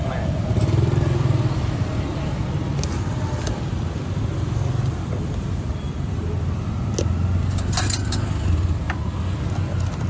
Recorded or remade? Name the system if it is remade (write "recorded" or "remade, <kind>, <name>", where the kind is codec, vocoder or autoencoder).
recorded